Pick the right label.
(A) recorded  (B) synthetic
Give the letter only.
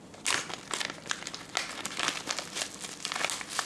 A